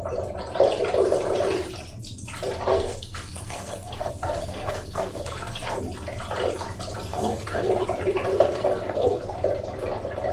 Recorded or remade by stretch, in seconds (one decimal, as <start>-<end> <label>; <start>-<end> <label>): 0.0-2.7 recorded; 2.7-5.8 remade; 5.8-7.1 recorded; 7.1-7.7 remade; 7.7-8.3 recorded; 8.3-9.2 remade; 9.2-10.3 recorded